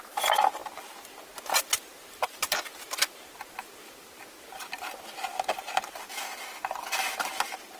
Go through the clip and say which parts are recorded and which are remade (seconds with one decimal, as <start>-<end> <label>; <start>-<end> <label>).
0.0-7.8 recorded